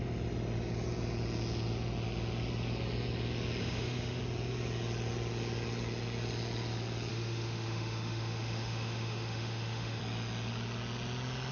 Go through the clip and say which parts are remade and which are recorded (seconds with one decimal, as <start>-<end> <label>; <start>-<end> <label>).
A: 0.0-3.6 recorded; 3.6-4.2 remade; 4.2-7.1 recorded; 7.1-10.0 remade; 10.0-11.5 recorded

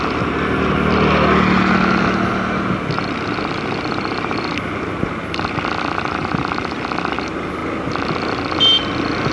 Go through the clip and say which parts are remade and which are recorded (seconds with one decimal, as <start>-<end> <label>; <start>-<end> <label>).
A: 0.0-9.3 recorded

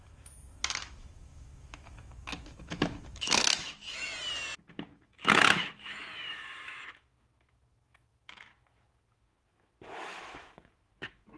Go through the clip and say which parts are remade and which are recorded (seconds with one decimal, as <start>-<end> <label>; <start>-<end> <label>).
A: 0.0-4.1 remade; 4.1-4.7 recorded; 4.7-11.4 remade

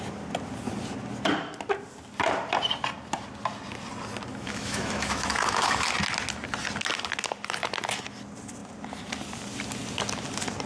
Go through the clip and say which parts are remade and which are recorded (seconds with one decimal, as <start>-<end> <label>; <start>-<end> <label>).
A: 0.0-4.3 recorded; 4.3-5.9 remade; 5.9-10.7 recorded

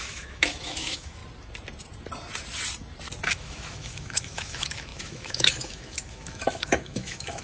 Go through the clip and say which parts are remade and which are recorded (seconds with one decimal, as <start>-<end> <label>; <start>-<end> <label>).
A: 0.0-1.2 remade; 1.2-3.3 recorded; 3.3-7.4 remade